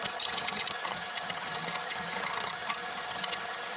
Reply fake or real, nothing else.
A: fake